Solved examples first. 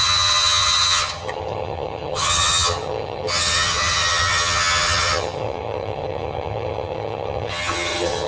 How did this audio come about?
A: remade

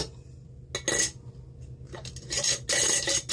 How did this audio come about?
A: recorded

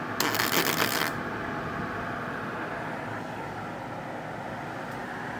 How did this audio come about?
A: recorded